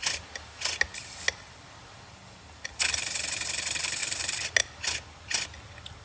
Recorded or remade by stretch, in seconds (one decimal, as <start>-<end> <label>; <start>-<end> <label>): 0.0-6.0 recorded